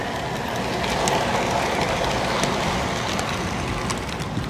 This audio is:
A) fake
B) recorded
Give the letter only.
B